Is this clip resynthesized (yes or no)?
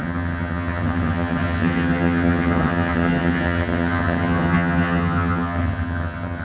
yes